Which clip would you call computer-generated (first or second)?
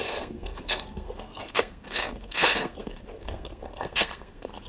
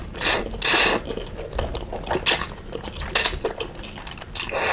first